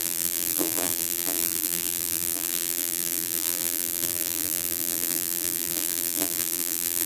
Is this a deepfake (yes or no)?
yes